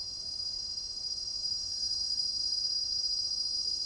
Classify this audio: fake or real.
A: fake